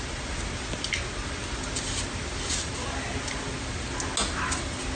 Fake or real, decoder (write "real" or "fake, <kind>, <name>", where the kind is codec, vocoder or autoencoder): real